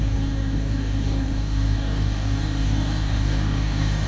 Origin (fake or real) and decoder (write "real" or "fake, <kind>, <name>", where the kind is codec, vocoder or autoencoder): fake, codec, DAC